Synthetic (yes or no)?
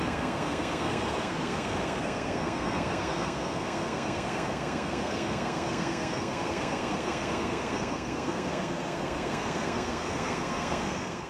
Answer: yes